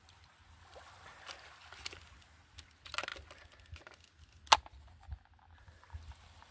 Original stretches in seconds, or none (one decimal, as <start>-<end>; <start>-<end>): 0.0-6.5